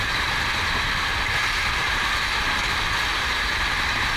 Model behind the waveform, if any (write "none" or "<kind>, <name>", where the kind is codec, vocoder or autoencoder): vocoder, BigVGAN v2